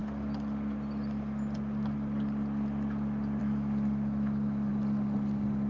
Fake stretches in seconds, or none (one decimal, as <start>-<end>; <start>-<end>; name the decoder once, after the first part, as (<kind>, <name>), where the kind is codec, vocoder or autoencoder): 3.4-4.7 (autoencoder, DAC-VAE)